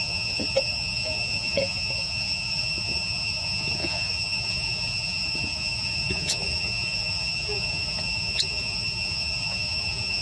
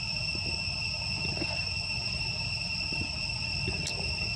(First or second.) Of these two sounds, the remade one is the first